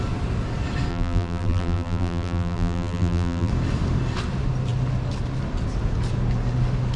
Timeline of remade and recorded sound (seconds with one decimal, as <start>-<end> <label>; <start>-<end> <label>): 0.0-0.9 recorded; 0.9-3.5 remade; 3.5-7.0 recorded